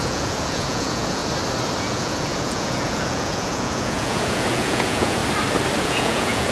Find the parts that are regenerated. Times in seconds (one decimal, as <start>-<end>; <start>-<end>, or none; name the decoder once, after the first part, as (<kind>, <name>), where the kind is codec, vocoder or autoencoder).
0.0-1.2 (vocoder, Vocos); 1.8-5.2; 5.8-6.5